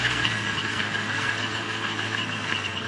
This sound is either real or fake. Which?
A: fake